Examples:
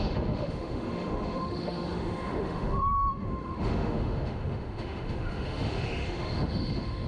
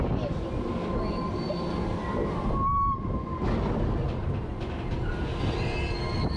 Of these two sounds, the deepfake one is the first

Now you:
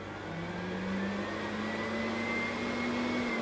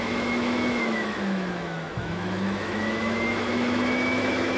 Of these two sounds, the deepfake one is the second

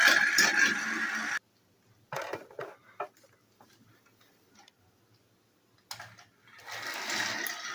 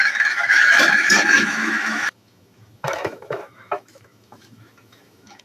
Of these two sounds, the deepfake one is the second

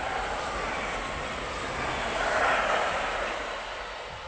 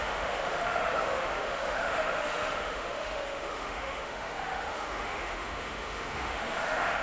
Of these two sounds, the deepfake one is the second